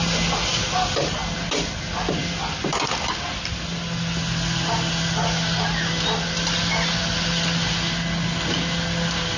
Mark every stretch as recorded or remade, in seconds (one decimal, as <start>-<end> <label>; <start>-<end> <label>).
0.0-9.4 recorded